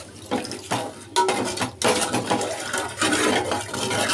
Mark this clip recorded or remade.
recorded